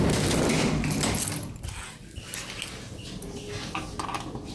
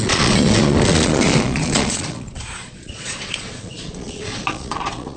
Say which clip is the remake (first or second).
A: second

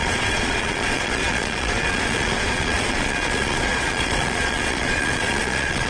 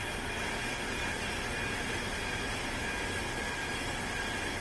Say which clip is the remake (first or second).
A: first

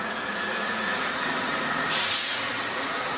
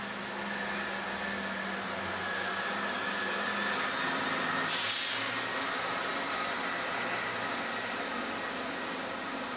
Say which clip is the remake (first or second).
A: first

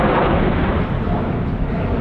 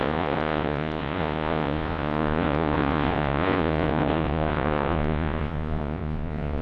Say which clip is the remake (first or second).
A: second